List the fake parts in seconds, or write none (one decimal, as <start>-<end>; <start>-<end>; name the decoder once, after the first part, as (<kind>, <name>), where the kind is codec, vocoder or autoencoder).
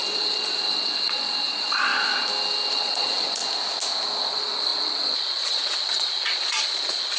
0.0-1.9 (vocoder, Vocos); 2.7-3.4; 4.3-7.2